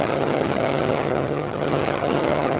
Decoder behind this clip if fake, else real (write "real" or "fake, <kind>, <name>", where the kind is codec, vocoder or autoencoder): fake, vocoder, HiFi-GAN